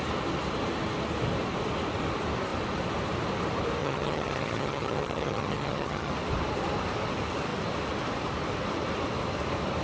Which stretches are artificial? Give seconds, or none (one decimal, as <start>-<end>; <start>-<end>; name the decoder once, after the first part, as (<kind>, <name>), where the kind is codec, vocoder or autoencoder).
3.8-6.1 (vocoder, HiFi-GAN)